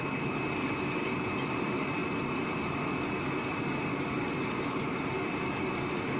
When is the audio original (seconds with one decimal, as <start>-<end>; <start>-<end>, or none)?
0.0-6.2